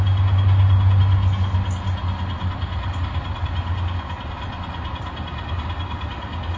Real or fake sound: real